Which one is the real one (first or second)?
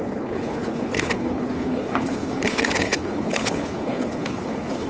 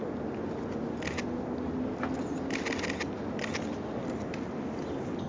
second